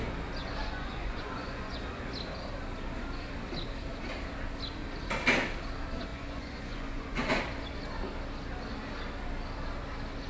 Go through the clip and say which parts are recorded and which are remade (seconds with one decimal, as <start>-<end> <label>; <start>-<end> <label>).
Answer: 0.0-0.4 recorded; 0.4-1.8 remade; 1.8-6.1 recorded; 6.1-7.4 remade; 7.4-10.3 recorded